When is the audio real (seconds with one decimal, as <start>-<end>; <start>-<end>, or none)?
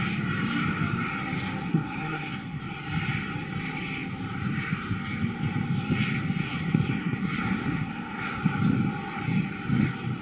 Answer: 0.0-1.6; 2.6-6.4; 8.4-10.2